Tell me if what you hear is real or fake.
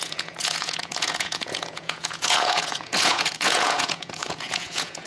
fake